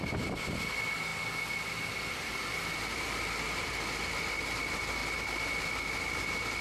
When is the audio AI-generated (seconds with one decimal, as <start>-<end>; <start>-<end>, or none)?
none